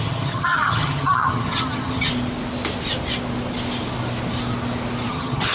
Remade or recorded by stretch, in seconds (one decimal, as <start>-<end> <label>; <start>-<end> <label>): 0.0-2.1 remade; 2.1-5.1 recorded; 5.1-5.5 remade

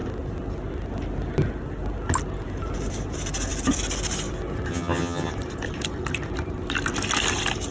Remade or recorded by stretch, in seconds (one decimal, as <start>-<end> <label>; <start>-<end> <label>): 0.0-4.7 recorded; 4.7-5.3 remade; 5.3-7.7 recorded